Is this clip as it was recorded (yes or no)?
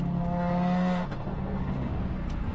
no